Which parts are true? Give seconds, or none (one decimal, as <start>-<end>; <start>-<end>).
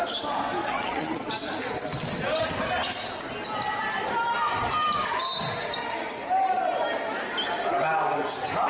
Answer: 0.0-0.6; 1.3-8.7